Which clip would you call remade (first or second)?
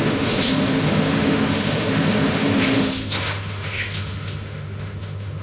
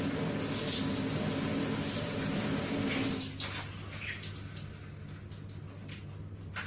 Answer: first